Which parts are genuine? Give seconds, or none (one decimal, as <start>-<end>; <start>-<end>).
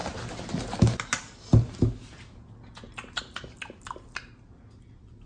0.0-5.3